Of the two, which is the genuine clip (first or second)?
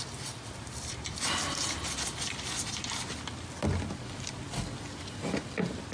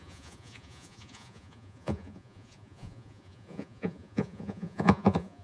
first